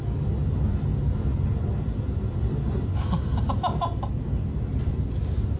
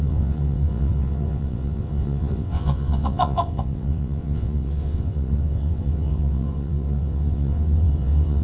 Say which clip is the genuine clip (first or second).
first